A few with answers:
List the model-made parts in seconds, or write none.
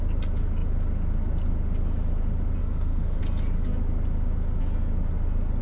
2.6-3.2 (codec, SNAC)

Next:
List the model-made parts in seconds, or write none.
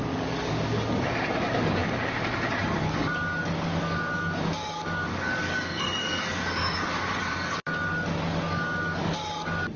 0.0-9.8 (codec, DAC)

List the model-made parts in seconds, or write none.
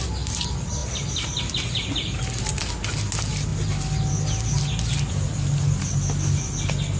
none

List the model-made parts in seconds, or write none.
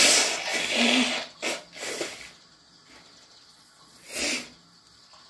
3.5-4.2 (vocoder, Vocos)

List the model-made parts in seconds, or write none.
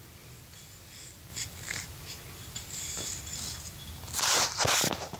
0.0-1.3 (vocoder, BigVGAN v2); 4.2-5.2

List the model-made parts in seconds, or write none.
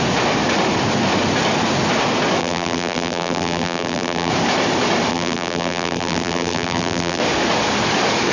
2.4-4.3 (vocoder, BigVGAN v2); 5.1-7.2